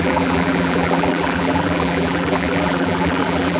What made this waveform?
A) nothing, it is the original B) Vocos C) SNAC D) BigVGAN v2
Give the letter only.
D